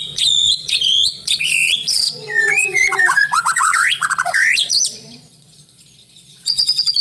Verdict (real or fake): fake